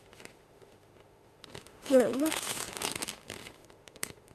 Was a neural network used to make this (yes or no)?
yes